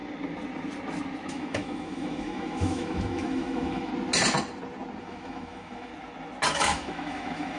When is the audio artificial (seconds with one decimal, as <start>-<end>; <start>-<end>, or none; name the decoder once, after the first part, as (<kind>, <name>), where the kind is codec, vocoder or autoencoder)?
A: 1.3-3.9 (autoencoder, DAC-VAE); 5.0-5.9; 6.5-7.6